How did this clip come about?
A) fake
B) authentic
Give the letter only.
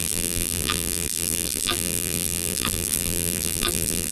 A